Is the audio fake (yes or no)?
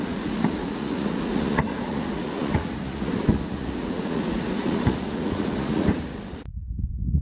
yes